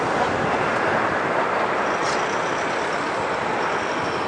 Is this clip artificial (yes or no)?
no